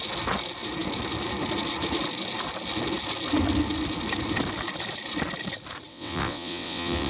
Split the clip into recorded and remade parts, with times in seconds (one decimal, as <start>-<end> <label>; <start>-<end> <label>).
0.0-5.9 recorded; 5.9-7.1 remade